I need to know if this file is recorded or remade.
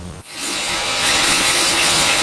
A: remade